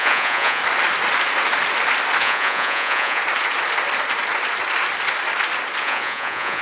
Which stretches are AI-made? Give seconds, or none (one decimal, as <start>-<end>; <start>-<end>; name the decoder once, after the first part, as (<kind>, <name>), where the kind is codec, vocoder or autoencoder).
0.0-0.6 (vocoder, Vocos); 2.2-3.2; 5.8-6.6

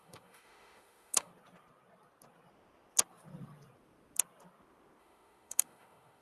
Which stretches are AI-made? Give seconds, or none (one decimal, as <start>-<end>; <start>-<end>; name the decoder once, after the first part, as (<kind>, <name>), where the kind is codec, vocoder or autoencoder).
0.0-1.3 (autoencoder, DAC-VAE); 5.0-6.2

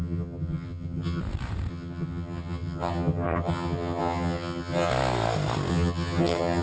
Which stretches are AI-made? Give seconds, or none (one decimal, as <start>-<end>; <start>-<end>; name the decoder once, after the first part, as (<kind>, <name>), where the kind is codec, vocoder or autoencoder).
0.0-1.2 (vocoder, HiFi-GAN); 1.7-4.9; 5.7-6.6

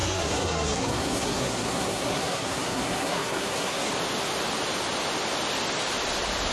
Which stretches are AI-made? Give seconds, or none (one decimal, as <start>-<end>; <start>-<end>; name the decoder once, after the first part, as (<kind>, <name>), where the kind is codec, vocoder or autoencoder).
0.0-3.9 (codec, SNAC)

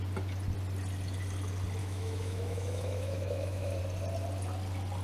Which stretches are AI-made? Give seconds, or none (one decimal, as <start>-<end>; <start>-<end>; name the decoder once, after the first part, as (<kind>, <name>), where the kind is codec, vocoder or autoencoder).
1.8-3.8 (autoencoder, DAC-VAE)

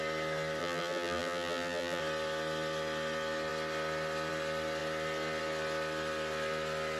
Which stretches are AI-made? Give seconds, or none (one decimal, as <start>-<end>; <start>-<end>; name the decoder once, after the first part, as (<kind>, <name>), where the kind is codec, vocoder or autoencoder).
0.6-2.0 (vocoder, BigVGAN v2)

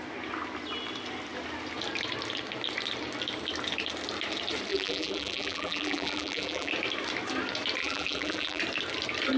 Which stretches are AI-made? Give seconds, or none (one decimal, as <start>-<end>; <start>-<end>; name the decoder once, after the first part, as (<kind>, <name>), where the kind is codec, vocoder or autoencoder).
4.7-6.7 (vocoder, BigVGAN v2); 7.8-8.6